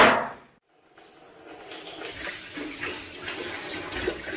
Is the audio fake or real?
real